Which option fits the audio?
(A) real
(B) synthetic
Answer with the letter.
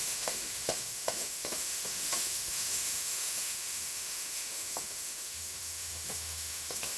B